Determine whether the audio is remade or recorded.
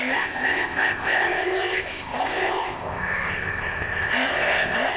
remade